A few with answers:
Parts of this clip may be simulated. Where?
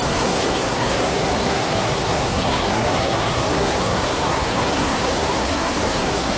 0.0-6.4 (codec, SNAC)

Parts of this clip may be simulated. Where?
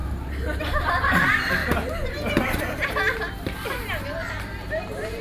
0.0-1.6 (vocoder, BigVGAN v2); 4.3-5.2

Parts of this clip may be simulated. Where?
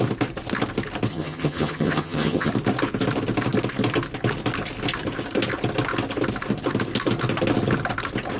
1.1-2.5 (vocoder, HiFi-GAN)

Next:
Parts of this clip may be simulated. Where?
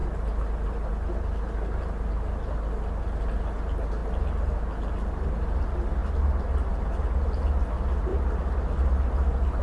none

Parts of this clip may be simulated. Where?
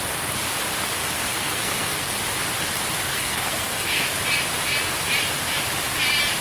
1.0-2.2 (codec, SNAC); 3.1-4.0